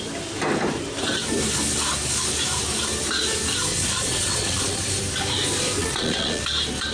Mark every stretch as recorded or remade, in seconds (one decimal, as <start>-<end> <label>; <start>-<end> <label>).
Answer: 0.0-3.7 recorded; 3.7-4.8 remade; 4.8-5.8 recorded; 5.8-6.4 remade; 6.4-6.9 recorded